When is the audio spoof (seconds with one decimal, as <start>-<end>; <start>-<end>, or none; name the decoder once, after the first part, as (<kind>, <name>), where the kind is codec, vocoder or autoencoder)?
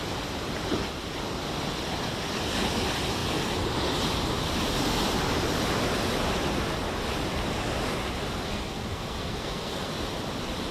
8.5-9.9 (codec, SNAC)